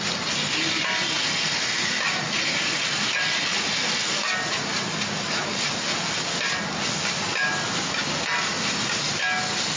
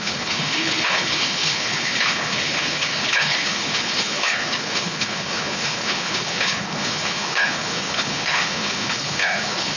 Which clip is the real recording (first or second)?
first